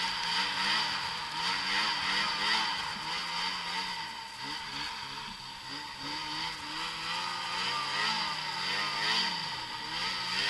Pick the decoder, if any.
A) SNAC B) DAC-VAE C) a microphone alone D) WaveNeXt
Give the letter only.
C